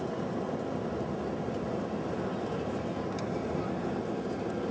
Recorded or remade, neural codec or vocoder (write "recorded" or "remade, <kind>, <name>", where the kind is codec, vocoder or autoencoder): recorded